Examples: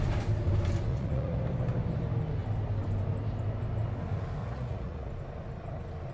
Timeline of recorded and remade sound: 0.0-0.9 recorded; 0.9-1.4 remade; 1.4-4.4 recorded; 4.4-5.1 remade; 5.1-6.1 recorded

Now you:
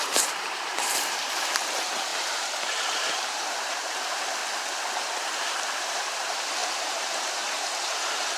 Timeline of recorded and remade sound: 0.0-4.4 remade; 4.4-4.9 recorded; 4.9-8.4 remade

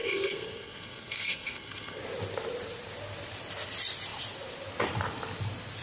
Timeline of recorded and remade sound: 0.0-2.0 remade; 2.0-5.8 recorded